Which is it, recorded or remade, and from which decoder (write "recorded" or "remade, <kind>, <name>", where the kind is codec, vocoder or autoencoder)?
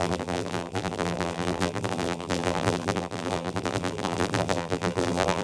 remade, vocoder, BigVGAN v2